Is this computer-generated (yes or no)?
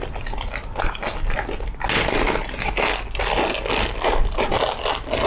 no